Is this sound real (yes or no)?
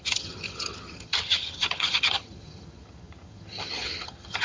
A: no